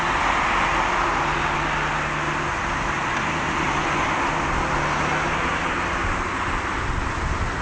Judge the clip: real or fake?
real